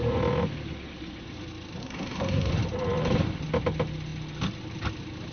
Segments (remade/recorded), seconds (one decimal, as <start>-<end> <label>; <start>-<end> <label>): 0.0-1.8 recorded; 1.8-2.5 remade; 2.5-5.3 recorded